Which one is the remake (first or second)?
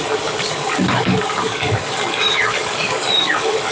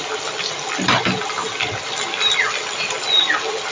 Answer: first